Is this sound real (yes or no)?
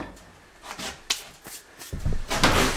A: yes